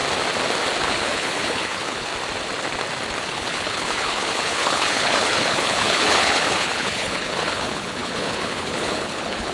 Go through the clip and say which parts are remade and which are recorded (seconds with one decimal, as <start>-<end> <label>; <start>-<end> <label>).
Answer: 0.0-0.8 recorded; 0.8-2.1 remade; 2.1-3.2 recorded; 3.2-9.5 remade